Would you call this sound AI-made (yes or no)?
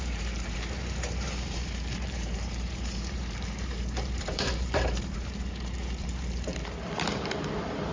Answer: yes